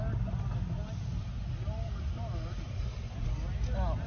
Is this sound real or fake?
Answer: real